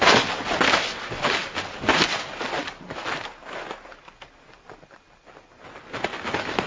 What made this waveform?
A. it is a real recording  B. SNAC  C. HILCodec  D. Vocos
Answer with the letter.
A